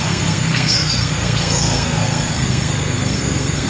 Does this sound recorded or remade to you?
remade